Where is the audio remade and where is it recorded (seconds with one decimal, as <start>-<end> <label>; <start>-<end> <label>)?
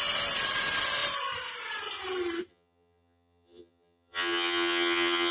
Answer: 0.0-2.5 recorded; 2.5-5.3 remade